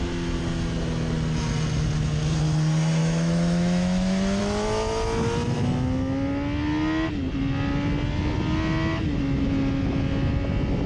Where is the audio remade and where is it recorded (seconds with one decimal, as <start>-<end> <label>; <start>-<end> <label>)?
0.0-3.0 recorded; 3.0-4.4 remade; 4.4-10.9 recorded